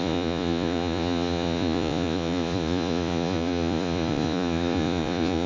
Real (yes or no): no